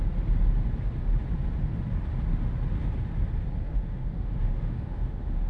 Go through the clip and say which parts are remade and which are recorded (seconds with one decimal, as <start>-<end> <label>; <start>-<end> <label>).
0.0-3.7 recorded; 3.7-5.5 remade